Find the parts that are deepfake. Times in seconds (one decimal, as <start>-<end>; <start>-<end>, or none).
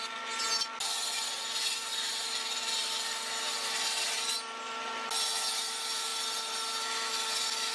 none